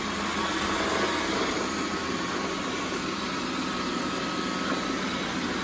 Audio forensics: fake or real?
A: real